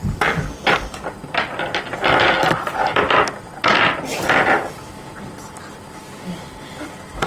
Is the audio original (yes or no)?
yes